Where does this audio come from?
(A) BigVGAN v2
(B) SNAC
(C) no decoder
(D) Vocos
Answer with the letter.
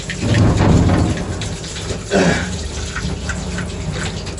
C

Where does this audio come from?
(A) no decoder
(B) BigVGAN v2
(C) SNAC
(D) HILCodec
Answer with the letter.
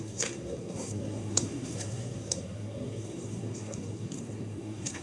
C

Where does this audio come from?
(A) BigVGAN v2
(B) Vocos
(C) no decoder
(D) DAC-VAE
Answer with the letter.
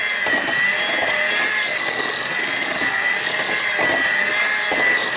C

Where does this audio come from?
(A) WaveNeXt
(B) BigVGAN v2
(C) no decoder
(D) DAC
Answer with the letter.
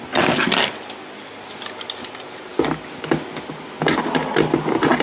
C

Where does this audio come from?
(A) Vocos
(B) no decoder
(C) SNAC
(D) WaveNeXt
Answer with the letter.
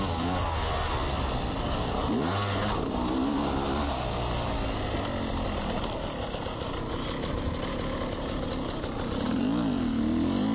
B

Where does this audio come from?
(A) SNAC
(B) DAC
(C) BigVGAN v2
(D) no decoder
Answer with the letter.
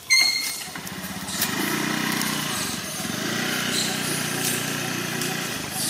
D